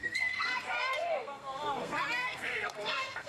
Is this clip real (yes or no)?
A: no